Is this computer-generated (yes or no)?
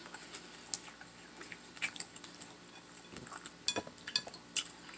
no